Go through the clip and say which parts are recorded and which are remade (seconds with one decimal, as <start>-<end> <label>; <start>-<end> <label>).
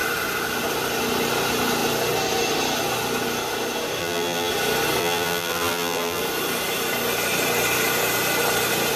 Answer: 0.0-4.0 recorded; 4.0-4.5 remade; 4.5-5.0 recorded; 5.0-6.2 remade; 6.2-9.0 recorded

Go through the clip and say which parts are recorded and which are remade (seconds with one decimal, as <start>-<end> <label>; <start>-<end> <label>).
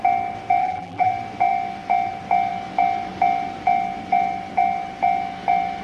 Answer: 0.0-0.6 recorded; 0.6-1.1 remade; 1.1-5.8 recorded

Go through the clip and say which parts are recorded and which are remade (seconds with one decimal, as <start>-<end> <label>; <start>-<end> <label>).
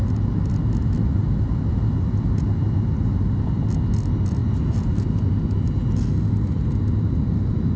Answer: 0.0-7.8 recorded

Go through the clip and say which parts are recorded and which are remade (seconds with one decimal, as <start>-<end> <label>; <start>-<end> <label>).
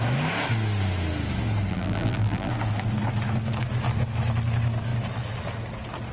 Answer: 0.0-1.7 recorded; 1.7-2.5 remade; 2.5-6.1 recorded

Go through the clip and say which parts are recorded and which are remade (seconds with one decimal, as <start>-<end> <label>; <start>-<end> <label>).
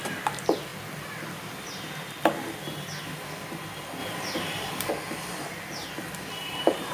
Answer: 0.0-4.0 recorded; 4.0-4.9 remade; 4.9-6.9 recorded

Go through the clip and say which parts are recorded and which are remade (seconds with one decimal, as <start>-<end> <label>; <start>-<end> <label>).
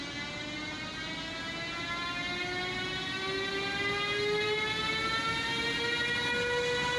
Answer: 0.0-7.0 recorded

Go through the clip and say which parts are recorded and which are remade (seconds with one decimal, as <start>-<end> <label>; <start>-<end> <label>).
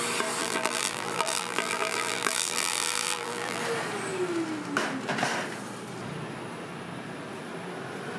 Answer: 0.0-0.4 recorded; 0.4-3.6 remade; 3.6-8.2 recorded